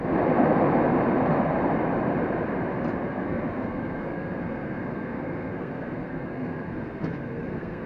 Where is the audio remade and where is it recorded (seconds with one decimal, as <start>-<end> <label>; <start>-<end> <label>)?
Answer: 0.0-3.1 recorded; 3.1-7.9 remade